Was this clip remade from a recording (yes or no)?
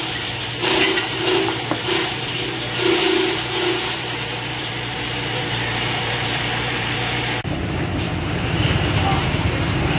yes